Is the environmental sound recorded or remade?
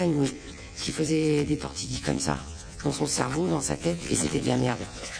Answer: remade